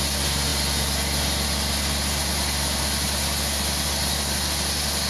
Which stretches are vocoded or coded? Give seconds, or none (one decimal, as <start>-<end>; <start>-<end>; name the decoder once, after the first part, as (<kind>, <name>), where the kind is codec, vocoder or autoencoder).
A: none